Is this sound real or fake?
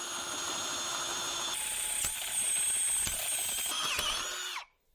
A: real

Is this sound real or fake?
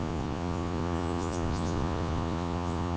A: fake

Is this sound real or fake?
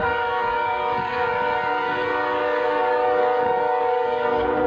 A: fake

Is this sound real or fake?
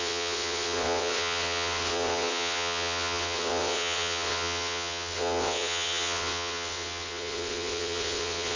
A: fake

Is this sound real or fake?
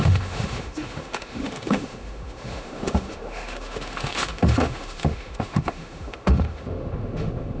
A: fake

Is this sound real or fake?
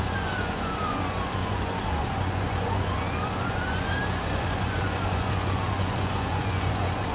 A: fake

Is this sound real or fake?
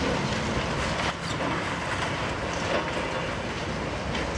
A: real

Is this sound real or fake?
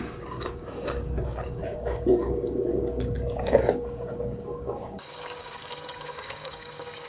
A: fake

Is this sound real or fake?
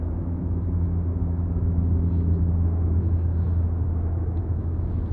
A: fake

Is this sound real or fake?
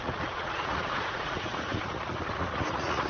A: fake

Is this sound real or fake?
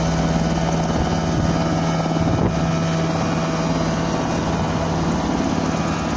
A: real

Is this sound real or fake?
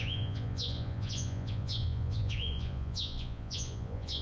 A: fake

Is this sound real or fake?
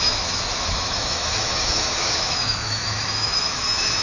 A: fake